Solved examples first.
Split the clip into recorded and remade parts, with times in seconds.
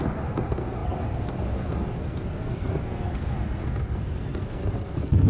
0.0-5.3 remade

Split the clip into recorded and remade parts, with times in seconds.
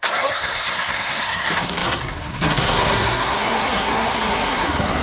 0.0-5.0 remade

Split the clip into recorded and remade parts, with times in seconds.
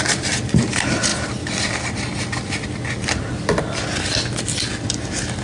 0.0-5.4 recorded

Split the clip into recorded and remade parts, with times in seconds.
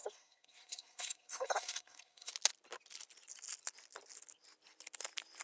0.0-2.3 remade; 2.3-5.4 recorded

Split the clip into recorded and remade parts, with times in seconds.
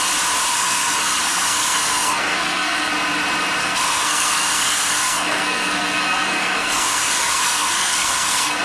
0.0-0.5 recorded; 0.5-2.9 remade; 2.9-3.6 recorded; 3.6-8.6 remade